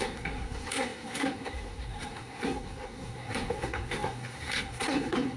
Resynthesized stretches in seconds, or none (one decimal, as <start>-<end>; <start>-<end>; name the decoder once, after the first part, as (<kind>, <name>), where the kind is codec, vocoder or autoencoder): 0.0-5.4 (codec, SNAC)